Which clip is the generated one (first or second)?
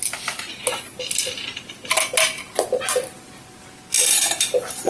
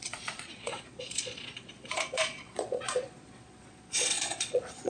second